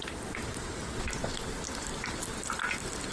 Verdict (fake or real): real